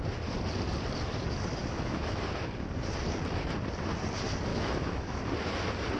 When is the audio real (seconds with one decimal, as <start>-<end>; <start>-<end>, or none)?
0.0-1.6; 2.2-4.5; 5.2-6.0